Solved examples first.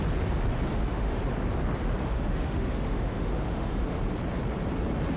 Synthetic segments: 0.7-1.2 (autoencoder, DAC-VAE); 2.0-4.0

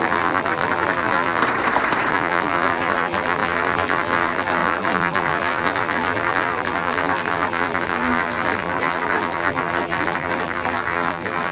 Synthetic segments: 0.0-1.4 (vocoder, BigVGAN v2); 2.1-11.5

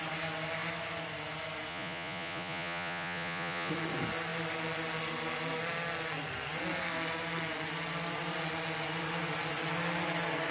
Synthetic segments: 1.7-3.7 (vocoder, Vocos)

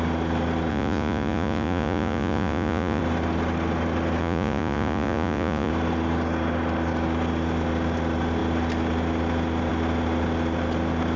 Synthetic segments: 0.7-3.0 (vocoder, Vocos); 4.2-5.7

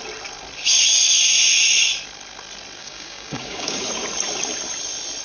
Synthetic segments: 2.8-3.9 (codec, DAC)

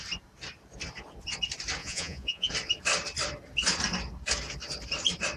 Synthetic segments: 1.8-2.5 (vocoder, Vocos)